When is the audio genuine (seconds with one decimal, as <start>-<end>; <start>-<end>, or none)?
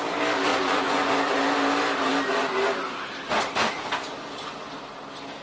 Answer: 0.0-0.5; 1.1-5.4